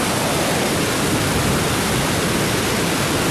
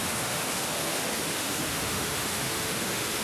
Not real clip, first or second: second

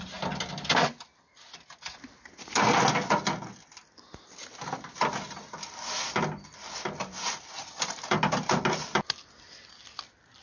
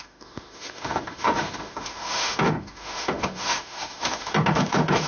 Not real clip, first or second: second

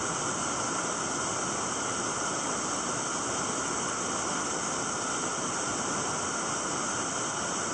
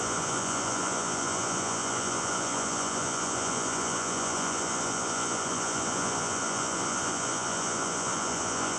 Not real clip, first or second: second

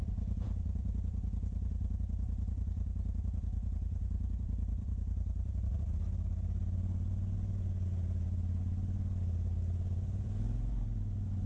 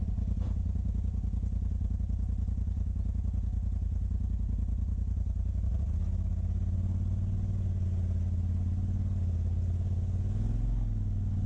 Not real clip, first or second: first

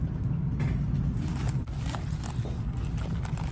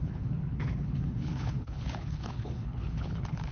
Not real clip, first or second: second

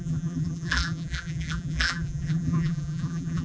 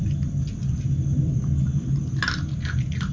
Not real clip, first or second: first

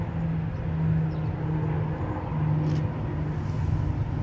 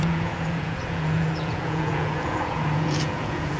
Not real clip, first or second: second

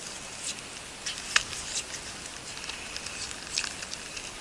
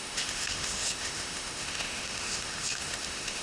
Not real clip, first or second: second